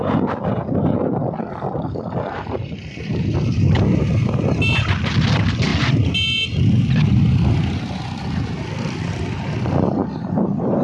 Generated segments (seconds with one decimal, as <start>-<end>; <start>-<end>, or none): none